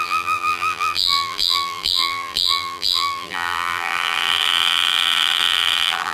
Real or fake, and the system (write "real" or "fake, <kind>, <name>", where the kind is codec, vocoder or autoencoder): fake, vocoder, BigVGAN v2